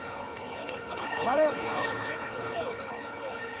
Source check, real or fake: fake